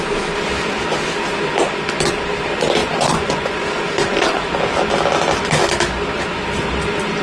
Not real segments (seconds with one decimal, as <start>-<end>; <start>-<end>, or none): 2.8-3.8